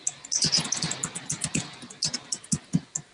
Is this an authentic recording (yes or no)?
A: yes